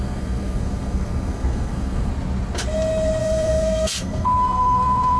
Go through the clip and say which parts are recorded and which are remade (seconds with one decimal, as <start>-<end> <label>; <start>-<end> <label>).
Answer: 0.0-2.1 remade; 2.1-3.2 recorded; 3.2-5.2 remade